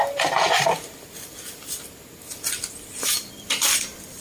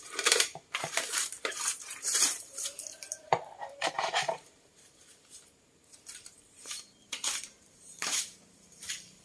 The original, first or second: first